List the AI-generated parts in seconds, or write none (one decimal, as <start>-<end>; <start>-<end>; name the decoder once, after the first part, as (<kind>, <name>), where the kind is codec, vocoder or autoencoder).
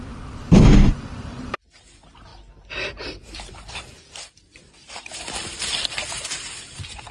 0.0-7.1 (vocoder, BigVGAN v2)